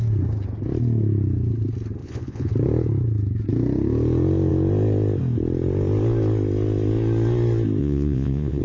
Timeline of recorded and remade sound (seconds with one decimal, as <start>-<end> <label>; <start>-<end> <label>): 0.0-2.0 recorded; 2.0-2.5 remade; 2.5-7.8 recorded; 7.8-8.6 remade